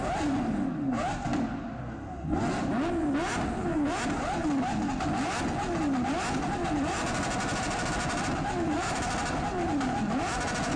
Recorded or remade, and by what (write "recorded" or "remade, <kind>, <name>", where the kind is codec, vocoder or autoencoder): recorded